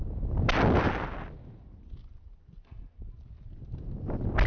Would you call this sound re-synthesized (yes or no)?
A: no